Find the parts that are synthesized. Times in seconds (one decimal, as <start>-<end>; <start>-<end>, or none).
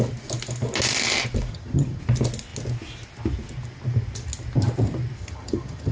1.5-2.0; 5.2-5.9